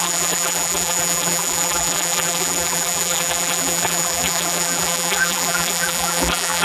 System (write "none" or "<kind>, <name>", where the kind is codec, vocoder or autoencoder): vocoder, BigVGAN v2